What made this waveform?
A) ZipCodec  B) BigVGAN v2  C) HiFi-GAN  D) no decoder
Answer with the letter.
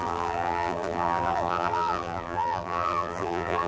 B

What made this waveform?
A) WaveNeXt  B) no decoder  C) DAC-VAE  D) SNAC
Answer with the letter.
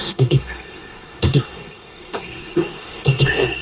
D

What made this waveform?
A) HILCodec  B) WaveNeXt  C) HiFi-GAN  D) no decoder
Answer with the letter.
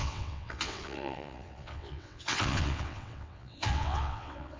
B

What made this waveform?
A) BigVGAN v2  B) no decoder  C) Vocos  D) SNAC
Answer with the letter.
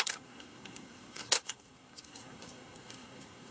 D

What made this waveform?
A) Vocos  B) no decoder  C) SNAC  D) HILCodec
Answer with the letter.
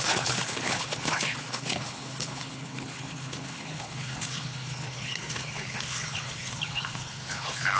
D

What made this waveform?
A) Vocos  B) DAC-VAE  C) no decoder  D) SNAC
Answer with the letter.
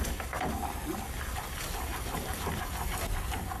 C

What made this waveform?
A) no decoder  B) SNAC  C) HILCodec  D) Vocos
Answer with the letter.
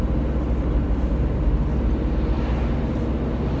A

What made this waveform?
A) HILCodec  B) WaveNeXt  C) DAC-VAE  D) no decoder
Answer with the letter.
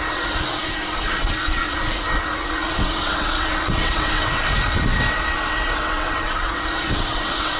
B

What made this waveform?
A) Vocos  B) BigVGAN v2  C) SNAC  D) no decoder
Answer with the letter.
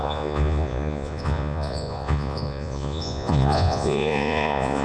A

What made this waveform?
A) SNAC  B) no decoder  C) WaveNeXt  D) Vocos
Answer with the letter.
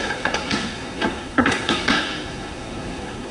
A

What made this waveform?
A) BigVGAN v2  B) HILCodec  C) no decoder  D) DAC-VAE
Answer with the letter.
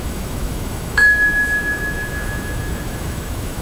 D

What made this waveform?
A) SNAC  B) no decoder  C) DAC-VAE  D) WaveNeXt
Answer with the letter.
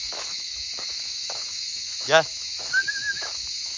C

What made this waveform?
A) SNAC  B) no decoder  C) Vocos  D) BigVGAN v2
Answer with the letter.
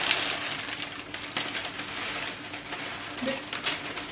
B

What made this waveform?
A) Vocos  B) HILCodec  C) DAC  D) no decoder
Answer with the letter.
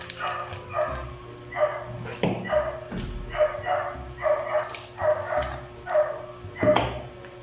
D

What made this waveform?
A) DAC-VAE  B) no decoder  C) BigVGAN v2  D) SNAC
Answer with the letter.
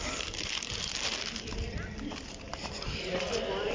B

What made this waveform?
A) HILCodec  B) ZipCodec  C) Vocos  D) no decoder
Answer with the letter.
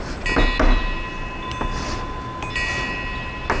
D